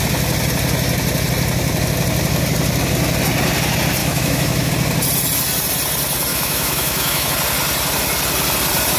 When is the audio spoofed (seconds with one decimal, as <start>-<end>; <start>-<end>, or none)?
4.0-4.7; 6.3-7.3